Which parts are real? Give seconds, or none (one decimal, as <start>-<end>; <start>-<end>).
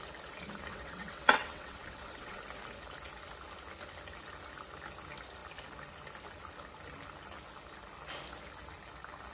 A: 0.0-0.7; 2.4-9.3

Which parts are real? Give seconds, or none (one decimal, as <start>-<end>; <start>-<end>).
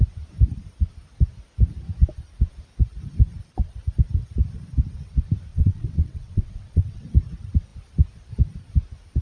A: 0.0-5.5; 7.0-9.2